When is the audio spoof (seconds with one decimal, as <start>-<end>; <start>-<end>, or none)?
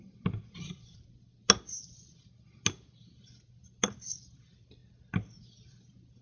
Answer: none